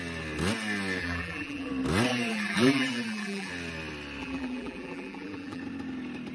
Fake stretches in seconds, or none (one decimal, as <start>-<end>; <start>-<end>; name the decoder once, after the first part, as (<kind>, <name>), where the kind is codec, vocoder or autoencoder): 1.0-1.7 (vocoder, BigVGAN v2); 2.1-3.5; 4.2-5.6